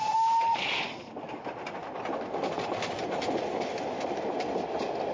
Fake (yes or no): no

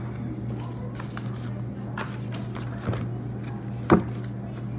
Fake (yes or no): no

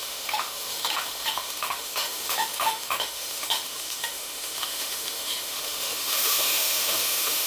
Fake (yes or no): yes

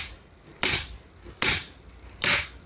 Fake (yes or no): no